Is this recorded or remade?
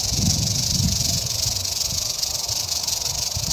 remade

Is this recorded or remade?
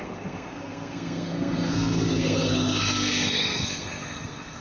remade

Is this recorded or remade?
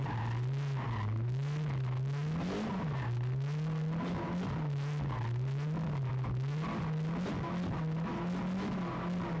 recorded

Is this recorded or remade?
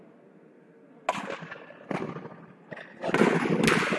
recorded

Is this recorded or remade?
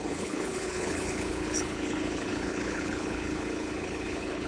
remade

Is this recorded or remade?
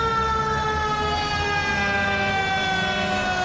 recorded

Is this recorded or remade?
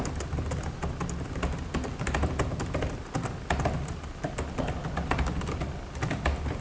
recorded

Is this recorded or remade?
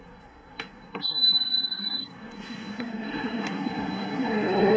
remade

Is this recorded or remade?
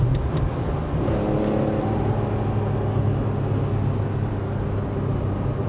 recorded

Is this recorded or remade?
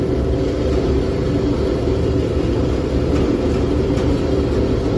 recorded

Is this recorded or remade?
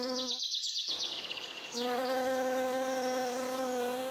remade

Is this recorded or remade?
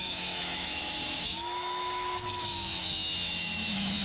remade